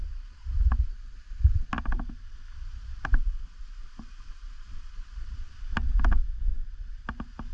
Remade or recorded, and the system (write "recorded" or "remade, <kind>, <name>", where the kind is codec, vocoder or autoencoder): recorded